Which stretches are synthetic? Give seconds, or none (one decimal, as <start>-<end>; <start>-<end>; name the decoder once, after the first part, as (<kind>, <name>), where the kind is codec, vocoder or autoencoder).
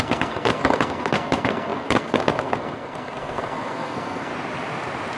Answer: 0.0-4.3 (codec, SNAC)